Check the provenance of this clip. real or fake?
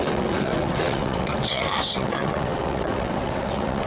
fake